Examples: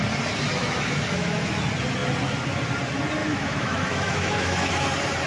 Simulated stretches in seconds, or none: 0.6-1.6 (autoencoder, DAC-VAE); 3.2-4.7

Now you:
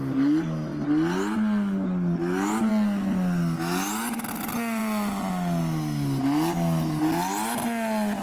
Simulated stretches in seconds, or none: none